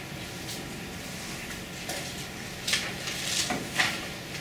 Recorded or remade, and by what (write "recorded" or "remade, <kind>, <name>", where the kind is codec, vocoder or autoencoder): recorded